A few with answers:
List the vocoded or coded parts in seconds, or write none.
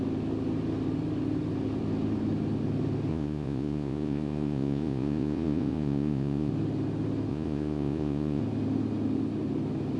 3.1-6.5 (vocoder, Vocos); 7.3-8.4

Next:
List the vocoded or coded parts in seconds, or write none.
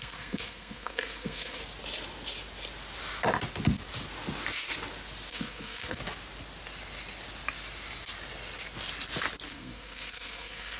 0.0-1.6 (codec, SNAC); 5.3-6.0; 9.5-10.8